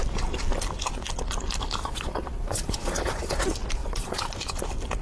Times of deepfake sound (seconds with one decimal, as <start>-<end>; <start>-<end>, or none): 1.8-3.4; 3.8-4.5